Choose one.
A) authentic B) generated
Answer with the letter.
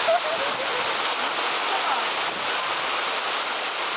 A